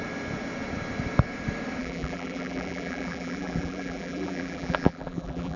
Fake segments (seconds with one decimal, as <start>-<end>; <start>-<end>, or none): 1.8-5.6